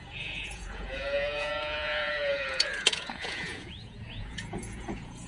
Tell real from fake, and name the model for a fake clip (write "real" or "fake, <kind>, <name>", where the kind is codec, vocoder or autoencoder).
fake, vocoder, Vocos